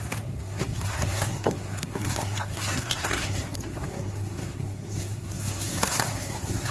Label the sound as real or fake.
fake